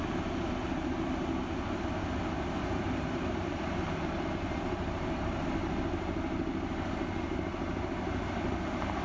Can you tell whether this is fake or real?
real